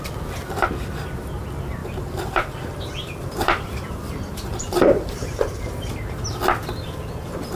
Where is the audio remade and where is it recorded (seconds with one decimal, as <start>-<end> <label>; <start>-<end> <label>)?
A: 0.0-1.8 recorded; 1.8-5.6 remade; 5.6-7.6 recorded